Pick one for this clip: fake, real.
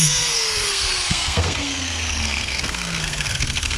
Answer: fake